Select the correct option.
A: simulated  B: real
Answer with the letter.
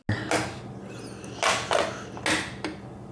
B